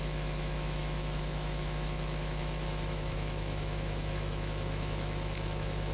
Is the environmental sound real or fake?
fake